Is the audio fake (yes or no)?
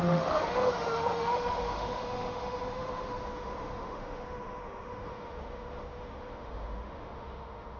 yes